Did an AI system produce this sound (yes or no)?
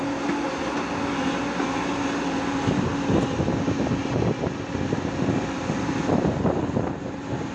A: no